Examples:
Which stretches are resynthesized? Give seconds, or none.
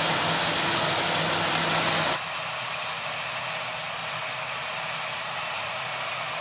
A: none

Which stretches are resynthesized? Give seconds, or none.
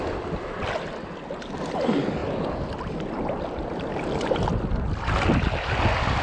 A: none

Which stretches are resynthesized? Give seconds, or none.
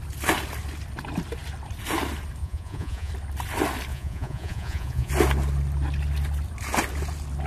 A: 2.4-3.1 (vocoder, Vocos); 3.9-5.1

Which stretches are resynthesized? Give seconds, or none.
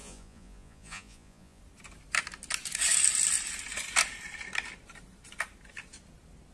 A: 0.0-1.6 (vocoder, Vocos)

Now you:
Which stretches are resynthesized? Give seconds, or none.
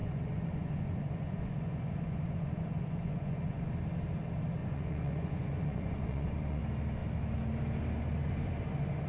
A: 0.0-3.7 (vocoder, Vocos); 4.6-6.6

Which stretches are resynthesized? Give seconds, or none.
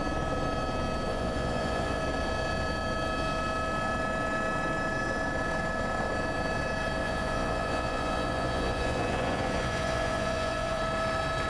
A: 1.1-2.0 (vocoder, Vocos); 7.0-10.8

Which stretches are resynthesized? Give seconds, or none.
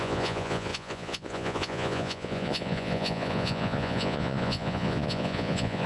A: 0.0-5.9 (vocoder, Vocos)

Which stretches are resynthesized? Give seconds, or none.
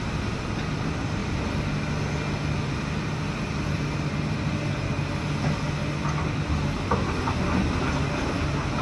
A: none